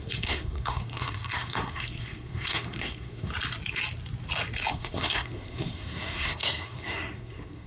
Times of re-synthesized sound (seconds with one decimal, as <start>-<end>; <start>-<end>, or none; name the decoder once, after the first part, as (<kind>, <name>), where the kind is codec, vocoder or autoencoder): 0.0-3.3 (codec, SNAC); 4.7-7.7